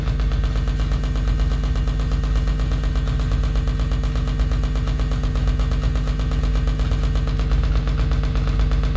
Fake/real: real